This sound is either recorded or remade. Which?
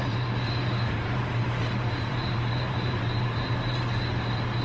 remade